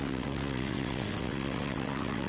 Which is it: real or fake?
fake